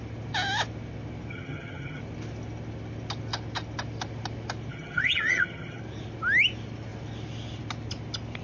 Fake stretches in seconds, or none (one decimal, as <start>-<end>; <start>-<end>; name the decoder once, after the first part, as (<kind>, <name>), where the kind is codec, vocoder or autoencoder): 1.3-2.0 (vocoder, HiFi-GAN); 4.7-5.8